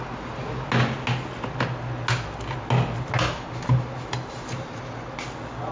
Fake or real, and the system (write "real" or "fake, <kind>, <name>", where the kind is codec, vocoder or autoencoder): real